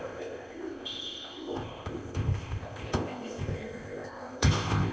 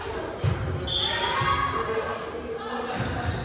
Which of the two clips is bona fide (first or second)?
second